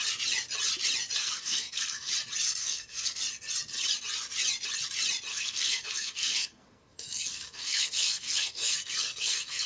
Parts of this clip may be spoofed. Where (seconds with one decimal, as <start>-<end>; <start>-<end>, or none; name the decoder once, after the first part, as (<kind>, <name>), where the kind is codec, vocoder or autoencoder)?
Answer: 1.2-2.1 (codec, SNAC); 2.6-3.2; 5.3-9.7